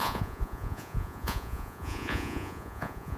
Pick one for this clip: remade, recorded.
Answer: remade